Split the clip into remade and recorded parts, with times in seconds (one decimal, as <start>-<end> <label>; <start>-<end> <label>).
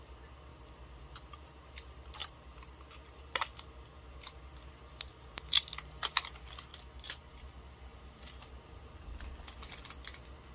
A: 0.0-0.5 recorded; 0.5-1.7 remade; 1.7-2.2 recorded; 2.2-4.4 remade; 4.4-5.1 recorded; 5.1-5.7 remade; 5.7-6.7 recorded; 6.7-9.2 remade; 9.2-10.5 recorded